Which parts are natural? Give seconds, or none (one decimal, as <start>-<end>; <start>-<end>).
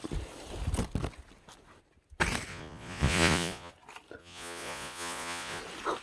0.0-2.5; 3.7-4.2; 5.6-6.0